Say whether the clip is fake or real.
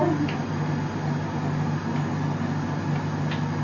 real